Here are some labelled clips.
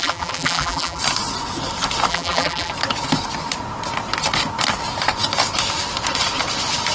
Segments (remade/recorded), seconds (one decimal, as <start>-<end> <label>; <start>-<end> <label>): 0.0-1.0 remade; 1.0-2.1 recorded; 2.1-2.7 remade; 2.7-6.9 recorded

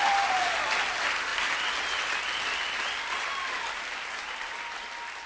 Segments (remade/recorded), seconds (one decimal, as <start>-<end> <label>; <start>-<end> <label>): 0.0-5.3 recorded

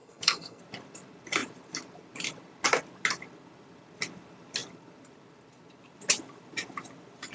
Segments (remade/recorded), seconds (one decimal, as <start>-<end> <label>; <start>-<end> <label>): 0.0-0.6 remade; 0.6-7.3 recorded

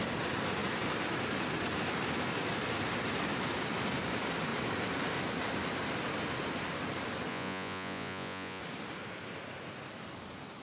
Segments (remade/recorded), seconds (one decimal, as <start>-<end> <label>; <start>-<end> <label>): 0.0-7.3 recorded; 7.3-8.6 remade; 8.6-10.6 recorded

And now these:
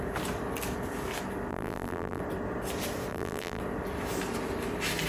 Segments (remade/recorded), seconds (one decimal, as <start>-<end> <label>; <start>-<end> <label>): 0.0-1.5 recorded; 1.5-2.2 remade; 2.2-3.1 recorded; 3.1-3.6 remade; 3.6-5.1 recorded